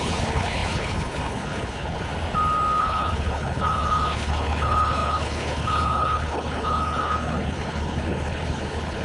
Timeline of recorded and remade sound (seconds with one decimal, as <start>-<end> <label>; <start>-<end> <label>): 0.0-2.1 remade; 2.1-2.8 recorded; 2.8-9.0 remade